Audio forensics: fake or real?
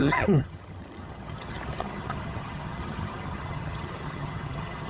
fake